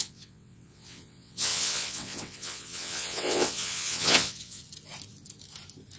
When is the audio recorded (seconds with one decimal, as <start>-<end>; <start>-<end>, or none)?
4.6-6.0